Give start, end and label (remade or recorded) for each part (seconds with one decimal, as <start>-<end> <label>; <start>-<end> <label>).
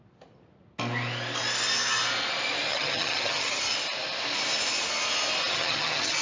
0.0-2.7 recorded; 2.7-3.6 remade; 3.6-5.5 recorded; 5.5-6.2 remade